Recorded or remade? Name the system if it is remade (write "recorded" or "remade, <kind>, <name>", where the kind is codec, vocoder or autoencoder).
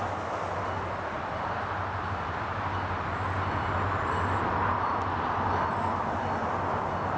recorded